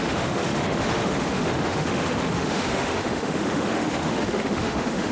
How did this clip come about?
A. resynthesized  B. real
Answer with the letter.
A